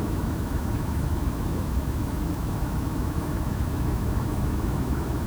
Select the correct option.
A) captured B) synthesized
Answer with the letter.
B